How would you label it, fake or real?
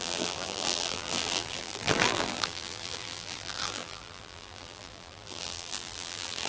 fake